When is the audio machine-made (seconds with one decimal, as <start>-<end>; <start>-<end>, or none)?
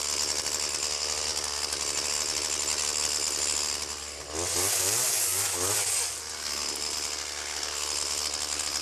none